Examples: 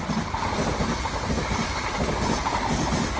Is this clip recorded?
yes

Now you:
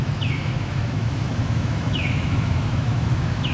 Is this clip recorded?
no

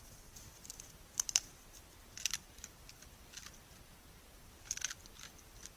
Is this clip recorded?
yes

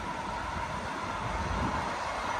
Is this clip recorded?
yes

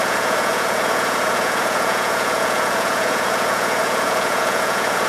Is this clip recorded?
no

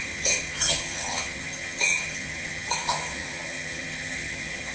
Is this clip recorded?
no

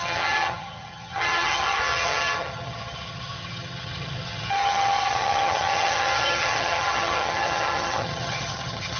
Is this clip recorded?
no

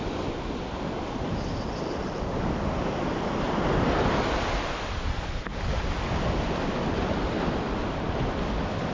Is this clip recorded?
yes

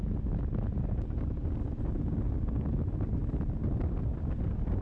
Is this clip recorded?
yes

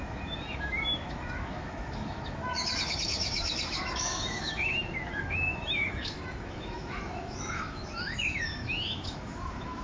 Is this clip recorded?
no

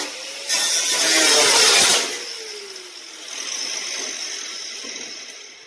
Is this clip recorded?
yes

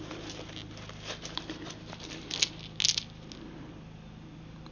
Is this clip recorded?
yes